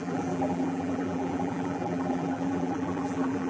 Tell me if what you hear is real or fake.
fake